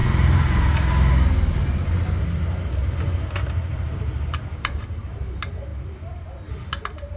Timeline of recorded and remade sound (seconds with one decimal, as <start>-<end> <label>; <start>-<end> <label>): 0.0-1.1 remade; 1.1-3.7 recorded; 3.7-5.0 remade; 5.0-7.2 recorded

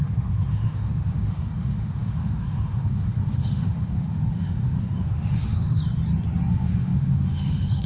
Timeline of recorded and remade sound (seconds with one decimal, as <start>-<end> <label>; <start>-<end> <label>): 0.0-5.8 remade; 5.8-6.5 recorded; 6.5-7.9 remade

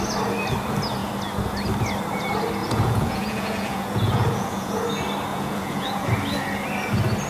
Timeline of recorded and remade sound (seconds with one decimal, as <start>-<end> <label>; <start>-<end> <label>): 0.0-2.6 recorded; 2.6-4.8 remade; 4.8-5.3 recorded; 5.3-6.1 remade; 6.1-7.3 recorded

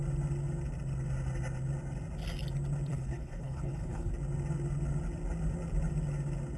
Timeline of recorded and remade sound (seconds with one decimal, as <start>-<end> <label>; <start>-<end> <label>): 0.0-2.9 recorded; 2.9-4.1 remade; 4.1-6.6 recorded